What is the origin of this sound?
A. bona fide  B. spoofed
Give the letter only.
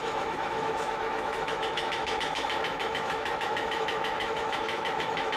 B